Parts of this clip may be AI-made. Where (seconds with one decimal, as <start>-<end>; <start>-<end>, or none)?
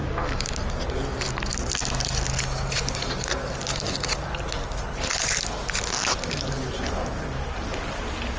none